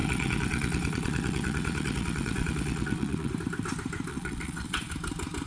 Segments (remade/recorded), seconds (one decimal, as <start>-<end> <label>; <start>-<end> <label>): 0.0-3.3 remade; 3.3-4.1 recorded; 4.1-4.9 remade; 4.9-5.5 recorded